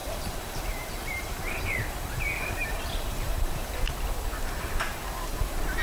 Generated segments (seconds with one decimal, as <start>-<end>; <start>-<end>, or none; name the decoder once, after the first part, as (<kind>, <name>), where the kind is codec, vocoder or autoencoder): 0.0-3.5 (vocoder, BigVGAN v2)